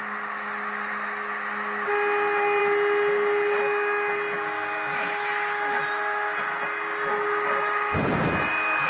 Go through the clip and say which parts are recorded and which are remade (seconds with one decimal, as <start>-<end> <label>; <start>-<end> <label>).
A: 0.0-8.9 recorded